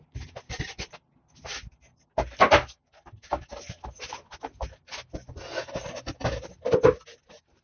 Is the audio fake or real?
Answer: real